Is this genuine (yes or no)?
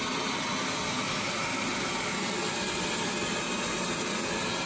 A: yes